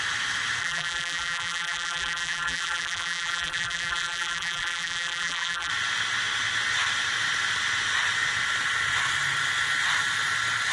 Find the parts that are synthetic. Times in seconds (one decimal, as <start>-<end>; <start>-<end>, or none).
0.6-5.7